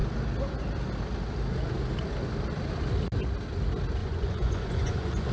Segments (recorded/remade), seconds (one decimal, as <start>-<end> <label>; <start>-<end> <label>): 0.0-4.0 recorded; 4.0-5.3 remade